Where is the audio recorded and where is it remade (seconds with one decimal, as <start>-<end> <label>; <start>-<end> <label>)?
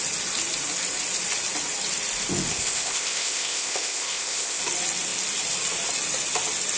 0.0-2.5 recorded; 2.5-4.6 remade; 4.6-6.8 recorded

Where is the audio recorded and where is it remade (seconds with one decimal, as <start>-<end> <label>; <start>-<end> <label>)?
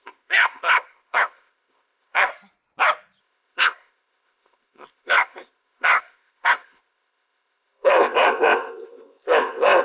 0.0-2.3 remade; 2.3-3.2 recorded; 3.2-9.8 remade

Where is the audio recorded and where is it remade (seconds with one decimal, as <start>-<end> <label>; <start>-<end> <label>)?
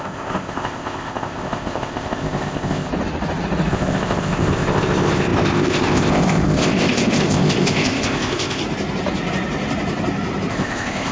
0.0-2.9 remade; 2.9-3.7 recorded; 3.7-8.6 remade; 8.6-10.5 recorded; 10.5-11.1 remade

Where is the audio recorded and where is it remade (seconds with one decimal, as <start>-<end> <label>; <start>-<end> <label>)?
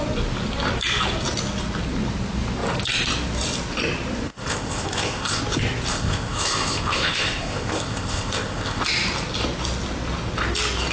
0.0-4.3 recorded; 4.3-5.4 remade; 5.4-5.9 recorded; 5.9-8.8 remade; 8.8-10.9 recorded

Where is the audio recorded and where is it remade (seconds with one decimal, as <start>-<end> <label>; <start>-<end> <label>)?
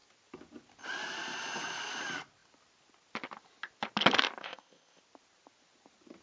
0.0-4.4 recorded; 4.4-5.0 remade; 5.0-6.2 recorded